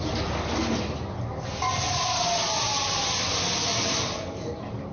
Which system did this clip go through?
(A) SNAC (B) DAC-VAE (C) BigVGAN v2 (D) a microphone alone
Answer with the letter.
D